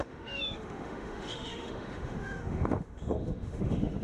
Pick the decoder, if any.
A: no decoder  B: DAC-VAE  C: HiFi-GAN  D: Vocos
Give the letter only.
B